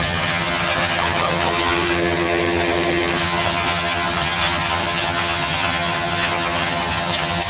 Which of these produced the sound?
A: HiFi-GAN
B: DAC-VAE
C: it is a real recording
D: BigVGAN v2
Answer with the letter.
A